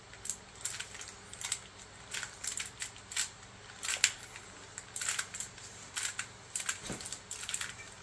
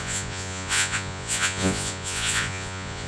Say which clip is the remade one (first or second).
second